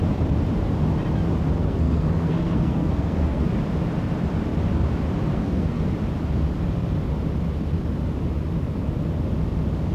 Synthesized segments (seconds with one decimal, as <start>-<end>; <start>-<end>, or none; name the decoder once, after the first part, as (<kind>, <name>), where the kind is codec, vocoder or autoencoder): 1.6-3.5 (codec, SNAC); 5.3-5.9